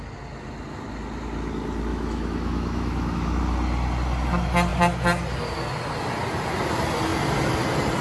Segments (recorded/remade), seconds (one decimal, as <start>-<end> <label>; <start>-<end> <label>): 0.0-1.9 recorded; 1.9-3.4 remade; 3.4-8.0 recorded